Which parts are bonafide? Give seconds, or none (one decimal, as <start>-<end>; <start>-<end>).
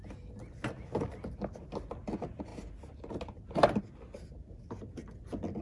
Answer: 0.0-5.6